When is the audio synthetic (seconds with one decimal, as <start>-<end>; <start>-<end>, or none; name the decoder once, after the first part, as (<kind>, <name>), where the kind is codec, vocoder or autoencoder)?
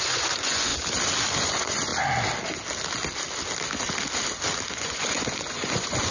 0.0-0.7 (vocoder, Vocos); 1.4-1.9; 4.7-6.1